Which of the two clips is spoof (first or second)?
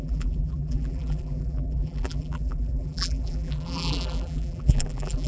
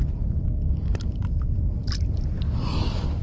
first